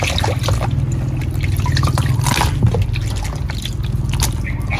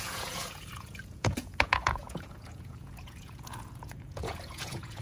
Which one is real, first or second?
first